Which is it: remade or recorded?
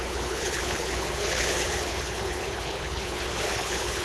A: remade